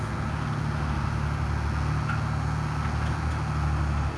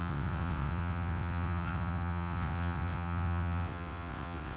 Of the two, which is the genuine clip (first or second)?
first